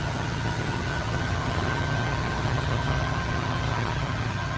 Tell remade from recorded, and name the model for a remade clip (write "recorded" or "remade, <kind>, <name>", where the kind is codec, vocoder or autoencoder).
remade, vocoder, HiFi-GAN